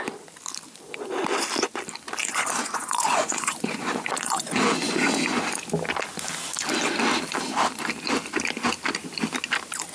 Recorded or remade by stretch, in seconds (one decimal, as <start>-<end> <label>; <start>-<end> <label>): 0.0-2.2 recorded; 2.2-5.6 remade; 5.6-9.9 recorded